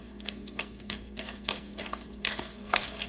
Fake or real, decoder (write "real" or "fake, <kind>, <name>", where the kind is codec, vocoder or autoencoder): fake, codec, SNAC